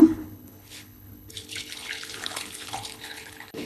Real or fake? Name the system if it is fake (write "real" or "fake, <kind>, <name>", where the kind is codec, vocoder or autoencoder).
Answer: fake, codec, HILCodec